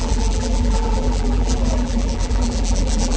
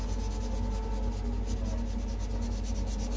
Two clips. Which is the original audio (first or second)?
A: second